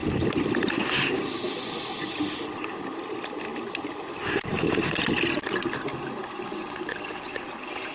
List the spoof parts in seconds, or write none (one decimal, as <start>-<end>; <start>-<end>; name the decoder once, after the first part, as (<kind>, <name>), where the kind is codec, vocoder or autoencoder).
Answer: 6.5-7.5 (vocoder, WaveNeXt)